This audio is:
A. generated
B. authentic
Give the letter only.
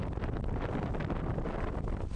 A